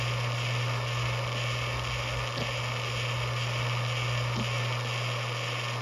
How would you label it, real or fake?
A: real